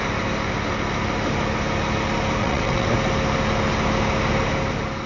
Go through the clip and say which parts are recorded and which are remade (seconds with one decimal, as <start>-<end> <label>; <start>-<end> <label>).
0.0-2.4 recorded; 2.4-2.9 remade; 2.9-5.1 recorded